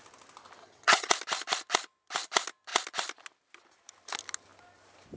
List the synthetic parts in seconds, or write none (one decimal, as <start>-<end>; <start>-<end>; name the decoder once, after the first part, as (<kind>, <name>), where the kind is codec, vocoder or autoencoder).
0.6-1.1 (vocoder, HiFi-GAN)